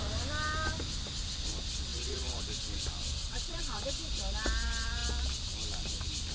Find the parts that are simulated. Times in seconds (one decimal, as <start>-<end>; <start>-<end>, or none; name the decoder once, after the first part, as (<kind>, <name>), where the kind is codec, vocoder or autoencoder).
1.9-2.4 (vocoder, WaveNeXt); 3.2-3.8